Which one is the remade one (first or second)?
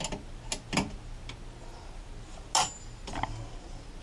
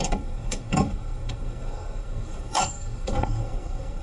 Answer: second